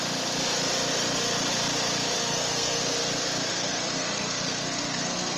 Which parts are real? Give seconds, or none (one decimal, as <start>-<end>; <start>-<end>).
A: 0.0-2.2; 2.8-3.5